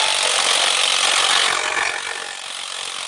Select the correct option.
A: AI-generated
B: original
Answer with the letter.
B